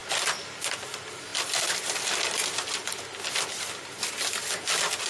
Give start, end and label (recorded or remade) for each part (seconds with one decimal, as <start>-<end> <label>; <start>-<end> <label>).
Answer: 0.0-5.1 recorded